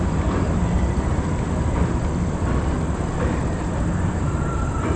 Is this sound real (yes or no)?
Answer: yes